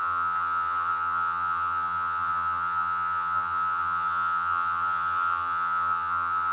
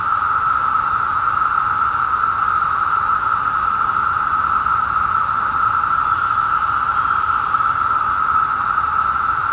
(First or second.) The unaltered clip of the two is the second